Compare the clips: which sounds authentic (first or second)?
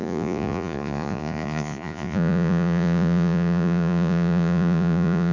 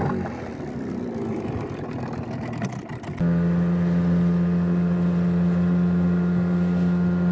second